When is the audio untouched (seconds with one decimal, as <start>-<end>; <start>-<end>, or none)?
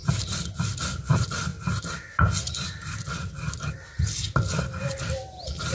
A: 0.0-5.7